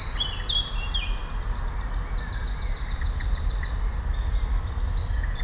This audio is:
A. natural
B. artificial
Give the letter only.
A